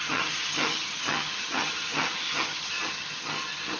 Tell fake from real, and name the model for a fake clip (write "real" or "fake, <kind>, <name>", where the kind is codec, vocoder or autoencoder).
fake, vocoder, HiFi-GAN